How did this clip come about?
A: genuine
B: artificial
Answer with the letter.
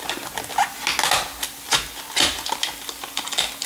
A